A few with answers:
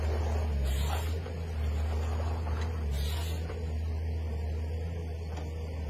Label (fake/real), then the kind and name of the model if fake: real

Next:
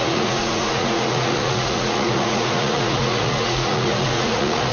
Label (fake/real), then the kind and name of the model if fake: fake, vocoder, Vocos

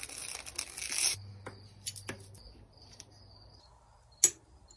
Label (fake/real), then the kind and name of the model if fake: real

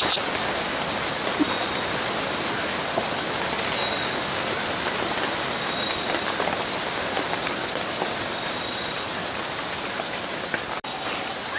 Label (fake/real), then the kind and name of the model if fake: real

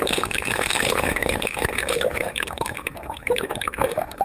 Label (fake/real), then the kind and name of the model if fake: fake, autoencoder, DAC-VAE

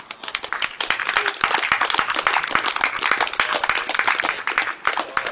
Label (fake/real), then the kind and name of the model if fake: real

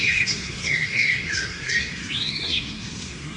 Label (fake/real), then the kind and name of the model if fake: fake, codec, SNAC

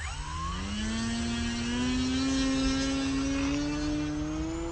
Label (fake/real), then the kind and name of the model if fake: real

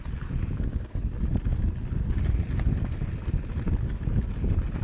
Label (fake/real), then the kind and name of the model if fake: real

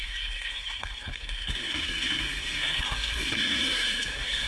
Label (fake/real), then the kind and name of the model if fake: fake, codec, SNAC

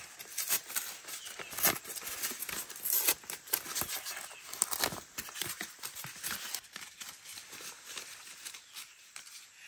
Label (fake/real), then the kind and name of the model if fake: real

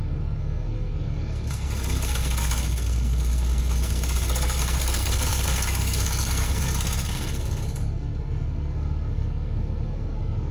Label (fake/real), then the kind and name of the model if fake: fake, codec, SNAC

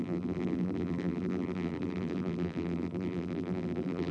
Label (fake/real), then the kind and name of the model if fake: fake, vocoder, BigVGAN v2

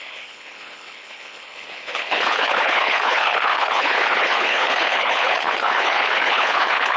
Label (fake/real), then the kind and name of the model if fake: fake, codec, HILCodec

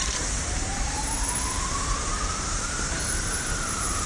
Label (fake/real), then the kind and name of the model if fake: fake, vocoder, BigVGAN v2